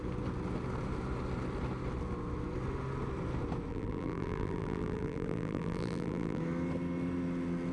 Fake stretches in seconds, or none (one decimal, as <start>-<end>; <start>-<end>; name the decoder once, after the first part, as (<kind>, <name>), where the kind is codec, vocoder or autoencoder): 3.7-6.4 (vocoder, BigVGAN v2)